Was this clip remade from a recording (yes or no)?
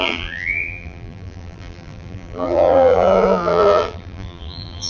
yes